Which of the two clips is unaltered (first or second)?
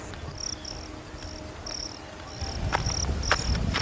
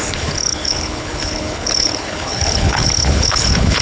first